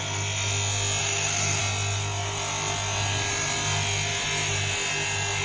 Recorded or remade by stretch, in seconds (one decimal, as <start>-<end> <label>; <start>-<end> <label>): 0.0-1.0 recorded; 1.0-1.6 remade; 1.6-5.4 recorded